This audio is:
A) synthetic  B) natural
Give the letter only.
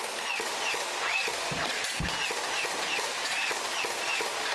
B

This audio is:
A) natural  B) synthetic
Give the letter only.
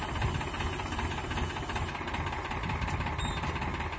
A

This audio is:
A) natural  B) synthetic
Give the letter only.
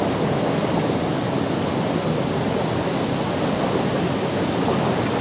A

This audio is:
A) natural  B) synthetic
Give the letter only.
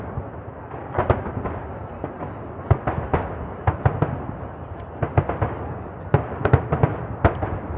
A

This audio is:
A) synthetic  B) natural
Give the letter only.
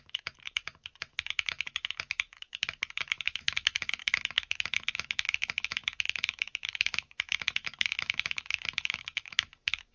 A